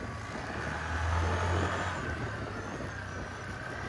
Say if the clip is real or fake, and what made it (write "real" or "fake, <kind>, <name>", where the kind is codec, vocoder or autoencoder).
real